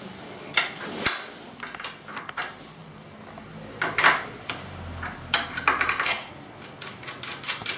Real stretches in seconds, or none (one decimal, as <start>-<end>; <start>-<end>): 0.0-7.8